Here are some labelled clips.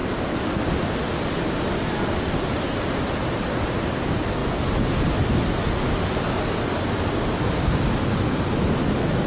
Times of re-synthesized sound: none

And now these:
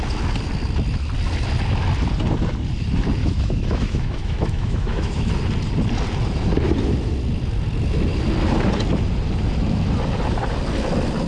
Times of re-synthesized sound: 3.2-5.3 (autoencoder, DAC-VAE)